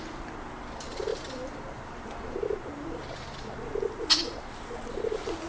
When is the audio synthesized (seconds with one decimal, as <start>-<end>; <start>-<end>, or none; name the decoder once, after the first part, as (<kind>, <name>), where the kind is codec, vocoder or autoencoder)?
none